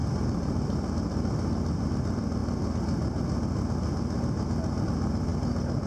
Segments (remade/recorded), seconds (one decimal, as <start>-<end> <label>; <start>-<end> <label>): 0.0-2.4 remade; 2.4-4.8 recorded; 4.8-5.3 remade; 5.3-5.9 recorded